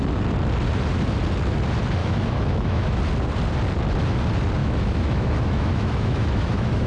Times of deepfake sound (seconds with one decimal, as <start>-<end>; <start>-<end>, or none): 2.0-3.0; 4.6-6.9